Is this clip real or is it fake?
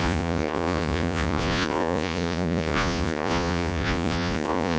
fake